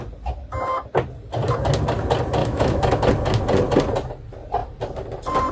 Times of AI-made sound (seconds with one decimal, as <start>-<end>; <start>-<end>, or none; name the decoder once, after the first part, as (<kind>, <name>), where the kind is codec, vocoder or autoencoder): 2.4-3.0 (autoencoder, DAC-VAE)